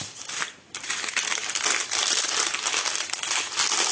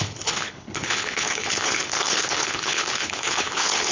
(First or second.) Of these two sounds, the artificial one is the second